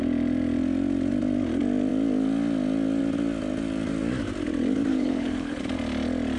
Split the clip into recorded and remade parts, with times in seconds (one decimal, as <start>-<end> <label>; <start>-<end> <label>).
0.0-4.9 recorded; 4.9-5.6 remade; 5.6-6.4 recorded